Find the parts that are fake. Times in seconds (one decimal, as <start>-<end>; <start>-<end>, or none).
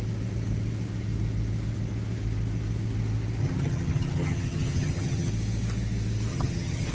3.4-5.3; 6.3-6.9